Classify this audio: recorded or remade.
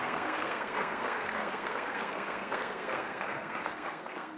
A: remade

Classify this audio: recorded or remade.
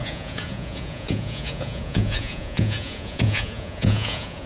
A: remade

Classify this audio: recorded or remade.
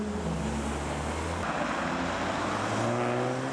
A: recorded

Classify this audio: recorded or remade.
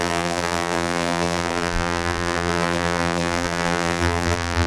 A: remade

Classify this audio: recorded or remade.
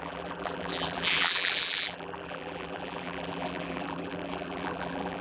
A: remade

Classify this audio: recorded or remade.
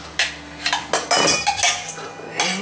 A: recorded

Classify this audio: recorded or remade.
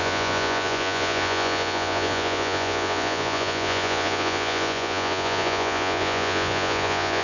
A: remade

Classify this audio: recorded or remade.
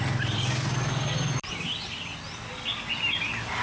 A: recorded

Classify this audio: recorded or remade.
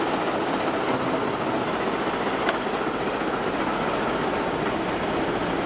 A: recorded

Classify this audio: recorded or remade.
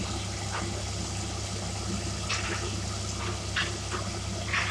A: recorded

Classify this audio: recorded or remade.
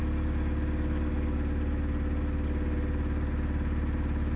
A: recorded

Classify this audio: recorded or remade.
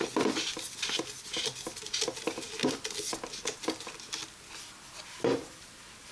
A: recorded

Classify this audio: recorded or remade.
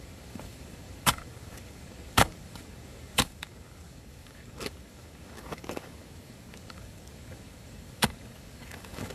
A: remade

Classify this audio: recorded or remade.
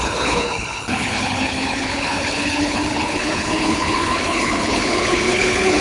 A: remade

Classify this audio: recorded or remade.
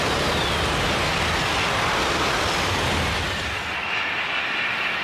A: recorded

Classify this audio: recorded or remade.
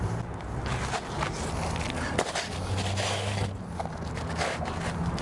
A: recorded